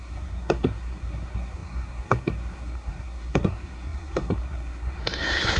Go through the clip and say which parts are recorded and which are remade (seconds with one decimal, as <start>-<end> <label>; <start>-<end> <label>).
0.0-5.6 remade